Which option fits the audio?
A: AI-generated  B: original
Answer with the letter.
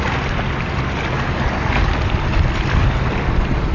B